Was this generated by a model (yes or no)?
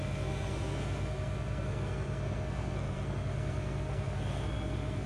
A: yes